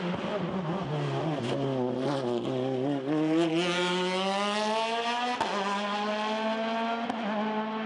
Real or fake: real